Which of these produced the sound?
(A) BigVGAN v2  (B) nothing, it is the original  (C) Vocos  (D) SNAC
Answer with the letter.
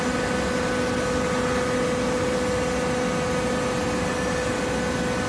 B